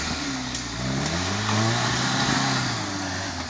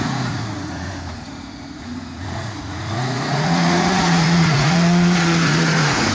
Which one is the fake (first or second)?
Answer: second